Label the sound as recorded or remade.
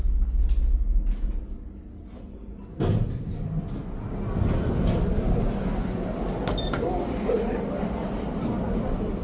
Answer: recorded